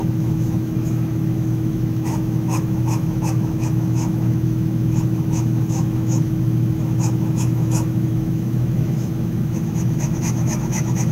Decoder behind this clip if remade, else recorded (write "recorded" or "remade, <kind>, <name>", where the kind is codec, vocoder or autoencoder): remade, autoencoder, DAC-VAE